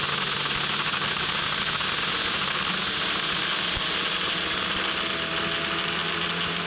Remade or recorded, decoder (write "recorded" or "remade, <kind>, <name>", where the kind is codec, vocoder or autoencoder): recorded